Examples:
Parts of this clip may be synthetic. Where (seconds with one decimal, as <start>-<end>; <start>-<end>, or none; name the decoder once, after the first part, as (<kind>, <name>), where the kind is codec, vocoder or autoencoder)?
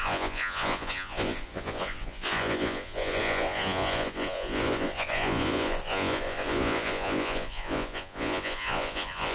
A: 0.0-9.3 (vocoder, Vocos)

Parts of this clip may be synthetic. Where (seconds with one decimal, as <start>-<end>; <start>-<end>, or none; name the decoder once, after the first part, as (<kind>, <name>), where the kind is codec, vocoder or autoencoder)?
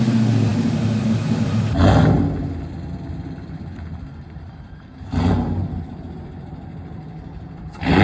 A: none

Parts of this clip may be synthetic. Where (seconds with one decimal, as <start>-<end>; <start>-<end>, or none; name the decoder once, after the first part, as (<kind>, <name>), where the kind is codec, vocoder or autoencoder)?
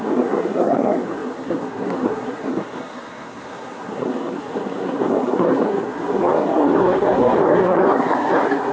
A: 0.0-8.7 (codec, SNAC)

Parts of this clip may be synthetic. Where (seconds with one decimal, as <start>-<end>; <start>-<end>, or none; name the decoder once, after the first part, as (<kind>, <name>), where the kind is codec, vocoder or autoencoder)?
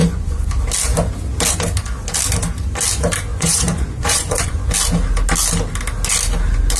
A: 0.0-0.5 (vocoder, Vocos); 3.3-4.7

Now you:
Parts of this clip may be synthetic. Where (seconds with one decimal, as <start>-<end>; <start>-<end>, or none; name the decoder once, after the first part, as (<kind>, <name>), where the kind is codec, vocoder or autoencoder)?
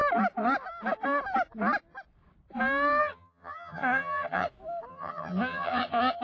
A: 3.0-4.5 (vocoder, HiFi-GAN); 4.9-6.2